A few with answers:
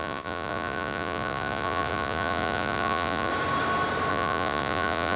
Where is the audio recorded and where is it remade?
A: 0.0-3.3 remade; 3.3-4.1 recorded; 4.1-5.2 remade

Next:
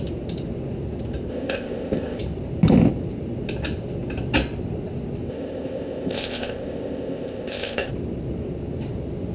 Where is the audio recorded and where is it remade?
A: 0.0-1.3 recorded; 1.3-2.2 remade; 2.2-5.3 recorded; 5.3-7.9 remade; 7.9-9.3 recorded

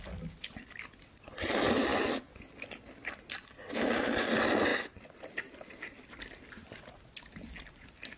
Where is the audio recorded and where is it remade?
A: 0.0-8.2 recorded

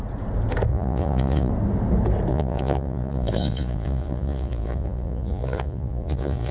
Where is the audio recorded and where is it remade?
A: 0.0-0.7 recorded; 0.7-1.5 remade; 1.5-2.3 recorded; 2.3-6.5 remade

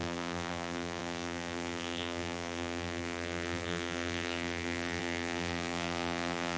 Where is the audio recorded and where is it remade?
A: 0.0-6.6 remade

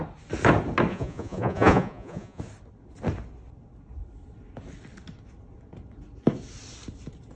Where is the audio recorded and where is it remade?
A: 0.0-0.9 recorded; 0.9-2.4 remade; 2.4-7.4 recorded

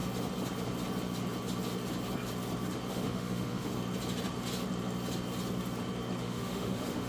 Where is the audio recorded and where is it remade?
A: 0.0-2.9 recorded; 2.9-3.7 remade; 3.7-6.2 recorded; 6.2-7.1 remade